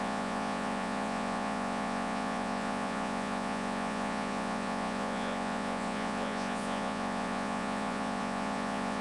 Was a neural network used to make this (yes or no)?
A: yes